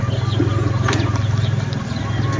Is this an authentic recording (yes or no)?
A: yes